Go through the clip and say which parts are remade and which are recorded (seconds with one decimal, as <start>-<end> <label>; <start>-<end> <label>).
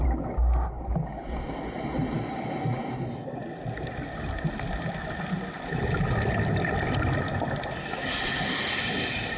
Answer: 0.0-9.4 recorded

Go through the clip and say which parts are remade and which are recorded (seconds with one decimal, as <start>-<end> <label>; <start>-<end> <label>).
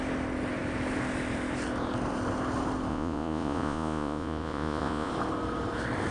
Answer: 0.0-2.9 recorded; 2.9-5.1 remade; 5.1-6.1 recorded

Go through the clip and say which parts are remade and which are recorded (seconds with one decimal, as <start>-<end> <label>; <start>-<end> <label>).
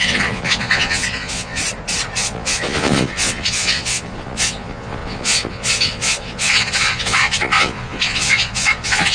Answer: 0.0-1.6 remade; 1.6-2.2 recorded; 2.2-9.1 remade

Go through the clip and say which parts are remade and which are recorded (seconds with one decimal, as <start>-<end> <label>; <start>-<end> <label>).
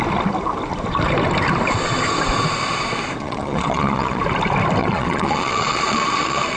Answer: 0.0-3.2 recorded; 3.2-4.2 remade; 4.2-4.8 recorded; 4.8-6.6 remade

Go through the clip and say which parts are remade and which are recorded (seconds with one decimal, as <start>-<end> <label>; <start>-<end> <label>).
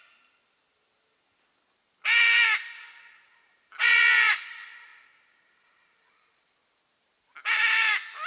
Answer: 0.0-8.3 recorded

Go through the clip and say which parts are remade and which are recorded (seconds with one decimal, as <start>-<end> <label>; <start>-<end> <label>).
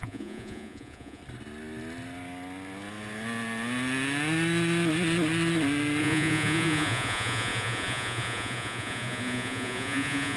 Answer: 0.0-1.2 remade; 1.2-6.0 recorded; 6.0-10.4 remade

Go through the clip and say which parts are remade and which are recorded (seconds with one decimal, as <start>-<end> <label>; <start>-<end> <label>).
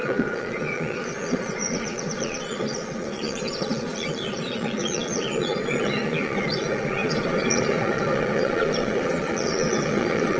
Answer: 0.0-10.4 remade